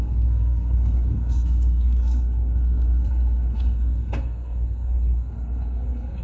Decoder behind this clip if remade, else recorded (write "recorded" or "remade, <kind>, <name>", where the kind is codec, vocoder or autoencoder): remade, codec, SNAC